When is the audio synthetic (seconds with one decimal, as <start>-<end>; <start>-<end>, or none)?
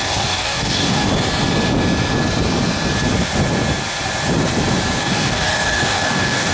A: 0.0-1.1; 5.0-6.5